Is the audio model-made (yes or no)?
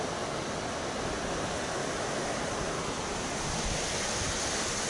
no